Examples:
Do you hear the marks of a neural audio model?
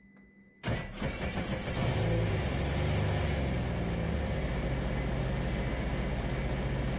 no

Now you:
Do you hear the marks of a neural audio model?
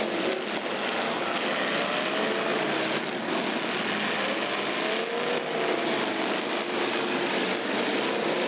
no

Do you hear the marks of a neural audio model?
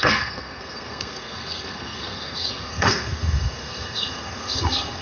yes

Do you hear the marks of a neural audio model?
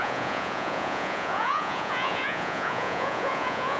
yes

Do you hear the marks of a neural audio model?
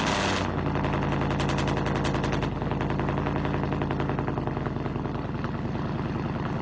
no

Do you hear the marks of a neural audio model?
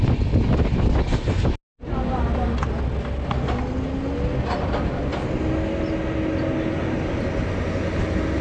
no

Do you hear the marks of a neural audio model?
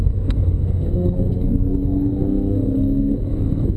yes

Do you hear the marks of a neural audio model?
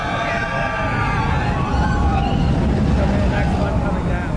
no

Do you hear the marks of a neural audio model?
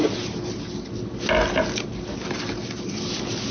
no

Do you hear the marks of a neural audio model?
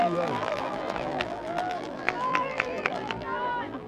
yes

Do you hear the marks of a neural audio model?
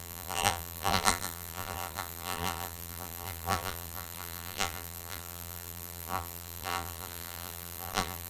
yes